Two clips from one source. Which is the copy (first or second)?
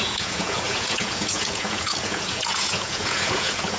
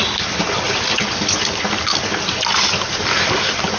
first